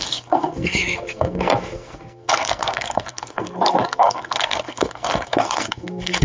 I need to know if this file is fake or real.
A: fake